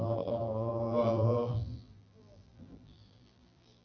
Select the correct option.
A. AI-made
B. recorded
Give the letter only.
A